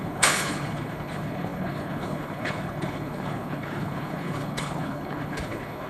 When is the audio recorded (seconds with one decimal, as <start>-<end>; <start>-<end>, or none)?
none